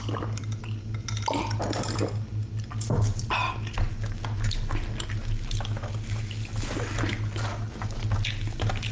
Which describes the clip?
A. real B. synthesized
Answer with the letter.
A